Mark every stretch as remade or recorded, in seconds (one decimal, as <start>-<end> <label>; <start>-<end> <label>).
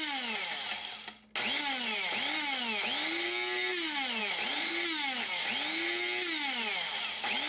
0.0-4.2 recorded; 4.2-4.7 remade; 4.7-7.5 recorded